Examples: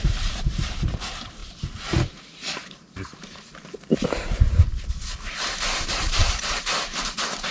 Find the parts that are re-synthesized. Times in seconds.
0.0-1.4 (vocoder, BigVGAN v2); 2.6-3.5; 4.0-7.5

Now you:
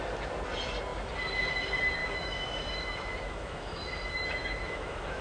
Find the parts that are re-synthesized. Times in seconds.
2.0-5.2 (autoencoder, DAC-VAE)